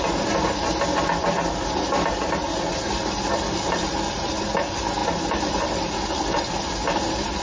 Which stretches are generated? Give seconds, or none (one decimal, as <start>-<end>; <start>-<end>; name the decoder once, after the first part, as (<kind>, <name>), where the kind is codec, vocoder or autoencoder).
none